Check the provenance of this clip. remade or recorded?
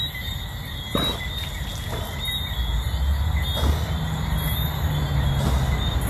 recorded